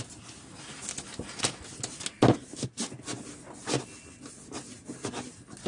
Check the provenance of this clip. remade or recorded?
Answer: recorded